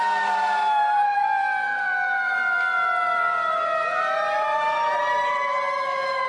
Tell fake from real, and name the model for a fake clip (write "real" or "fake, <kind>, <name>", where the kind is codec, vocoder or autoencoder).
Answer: fake, vocoder, BigVGAN v2